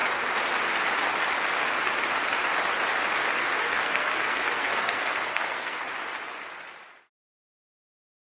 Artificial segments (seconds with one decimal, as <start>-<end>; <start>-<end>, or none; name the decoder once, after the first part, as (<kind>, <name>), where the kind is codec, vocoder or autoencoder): 3.4-5.9 (codec, SNAC)

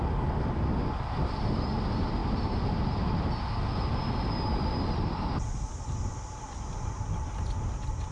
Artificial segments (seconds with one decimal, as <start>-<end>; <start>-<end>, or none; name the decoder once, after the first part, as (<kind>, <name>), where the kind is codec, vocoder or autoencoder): none

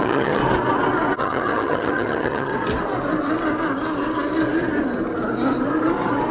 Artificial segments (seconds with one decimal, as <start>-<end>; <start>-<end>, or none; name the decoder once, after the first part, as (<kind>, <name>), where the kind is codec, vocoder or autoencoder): 0.0-0.4 (vocoder, HiFi-GAN); 1.2-2.5

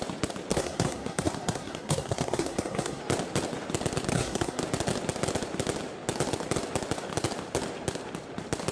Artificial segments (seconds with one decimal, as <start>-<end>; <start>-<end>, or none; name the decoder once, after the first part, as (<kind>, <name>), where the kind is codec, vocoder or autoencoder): 0.5-3.0 (codec, SNAC); 4.1-4.6

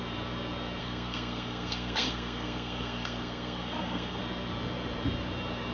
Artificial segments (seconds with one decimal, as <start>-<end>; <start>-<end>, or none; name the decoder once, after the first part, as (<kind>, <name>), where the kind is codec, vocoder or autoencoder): 0.8-4.2 (codec, SNAC)